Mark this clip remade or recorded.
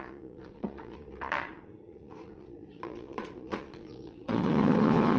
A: remade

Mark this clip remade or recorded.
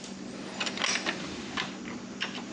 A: recorded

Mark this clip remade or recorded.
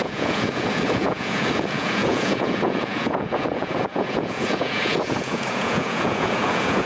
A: remade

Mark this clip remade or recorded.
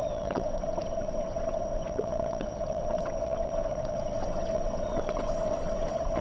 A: remade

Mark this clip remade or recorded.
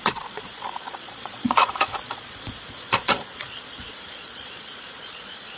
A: remade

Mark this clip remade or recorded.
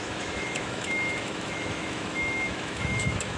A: remade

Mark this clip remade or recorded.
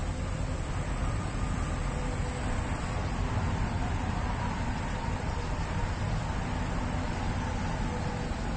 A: recorded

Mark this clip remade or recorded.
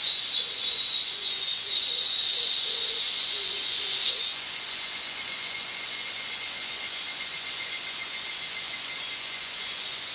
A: remade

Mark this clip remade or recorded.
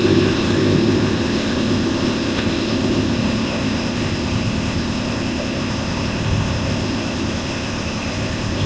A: remade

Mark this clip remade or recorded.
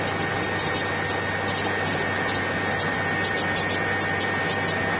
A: recorded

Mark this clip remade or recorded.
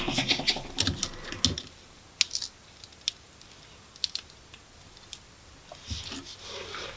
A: recorded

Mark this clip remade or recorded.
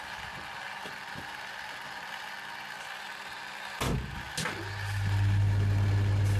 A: recorded